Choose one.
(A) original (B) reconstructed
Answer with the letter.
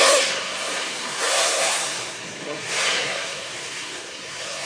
B